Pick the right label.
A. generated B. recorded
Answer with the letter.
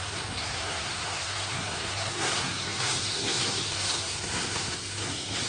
A